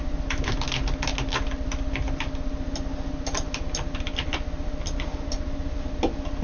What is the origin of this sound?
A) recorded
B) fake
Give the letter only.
A